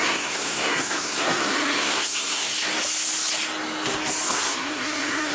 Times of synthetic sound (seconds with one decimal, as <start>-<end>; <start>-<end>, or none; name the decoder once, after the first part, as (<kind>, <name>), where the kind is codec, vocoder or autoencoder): 0.0-2.5 (codec, SNAC); 4.3-5.3